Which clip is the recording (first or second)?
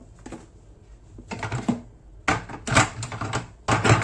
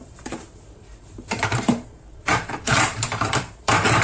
first